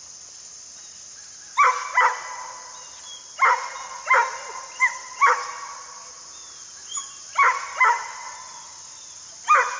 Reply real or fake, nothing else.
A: real